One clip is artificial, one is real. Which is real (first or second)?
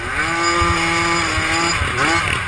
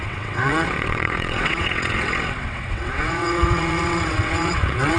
first